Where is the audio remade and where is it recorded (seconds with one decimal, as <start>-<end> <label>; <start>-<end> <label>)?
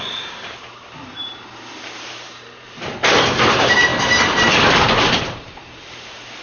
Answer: 0.0-3.9 remade; 3.9-4.9 recorded; 4.9-6.4 remade